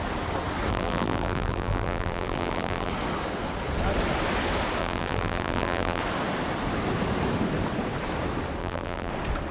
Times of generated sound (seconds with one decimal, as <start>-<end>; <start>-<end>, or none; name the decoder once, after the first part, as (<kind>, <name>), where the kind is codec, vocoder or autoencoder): 0.7-2.9 (vocoder, BigVGAN v2); 4.8-6.0; 8.6-9.1